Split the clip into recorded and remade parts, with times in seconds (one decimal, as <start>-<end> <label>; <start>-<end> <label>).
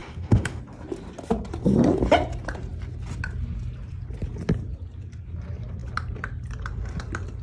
0.0-0.6 remade; 0.6-7.4 recorded